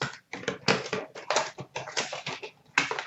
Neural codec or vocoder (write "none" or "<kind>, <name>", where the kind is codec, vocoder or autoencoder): none